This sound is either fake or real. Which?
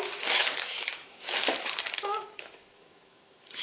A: fake